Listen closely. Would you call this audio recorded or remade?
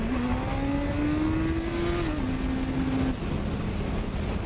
recorded